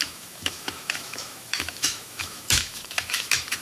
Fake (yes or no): yes